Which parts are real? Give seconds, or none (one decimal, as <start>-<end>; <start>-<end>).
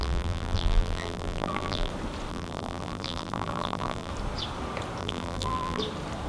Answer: 1.9-2.3; 4.1-5.0; 5.8-6.3